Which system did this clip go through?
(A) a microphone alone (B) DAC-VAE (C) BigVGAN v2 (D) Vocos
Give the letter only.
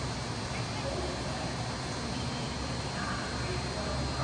A